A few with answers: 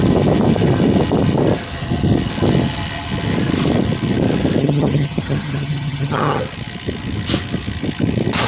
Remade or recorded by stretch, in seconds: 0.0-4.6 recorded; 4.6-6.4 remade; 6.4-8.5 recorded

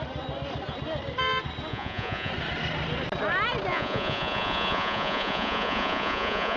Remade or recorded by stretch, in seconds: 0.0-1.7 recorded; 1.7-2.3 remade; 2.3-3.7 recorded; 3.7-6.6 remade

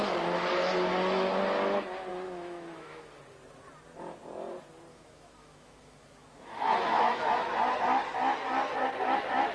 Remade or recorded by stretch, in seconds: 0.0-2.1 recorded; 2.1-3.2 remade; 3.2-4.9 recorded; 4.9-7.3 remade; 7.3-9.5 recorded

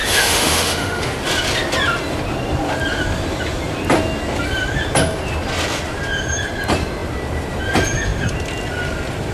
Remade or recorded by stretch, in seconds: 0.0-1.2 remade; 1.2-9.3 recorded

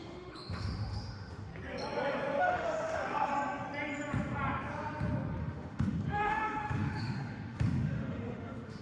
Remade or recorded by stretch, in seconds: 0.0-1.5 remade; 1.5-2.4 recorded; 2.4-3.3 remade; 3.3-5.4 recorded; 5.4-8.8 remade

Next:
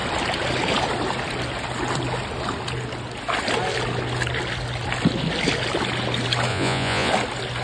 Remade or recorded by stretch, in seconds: 0.0-6.5 recorded; 6.5-7.1 remade; 7.1-7.6 recorded

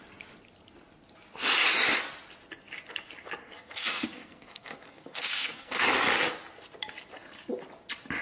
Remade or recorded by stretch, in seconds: 0.0-3.4 recorded; 3.4-5.9 remade; 5.9-8.2 recorded

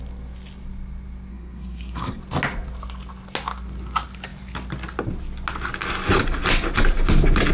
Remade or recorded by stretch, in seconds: 0.0-1.3 recorded; 1.3-2.2 remade; 2.2-7.5 recorded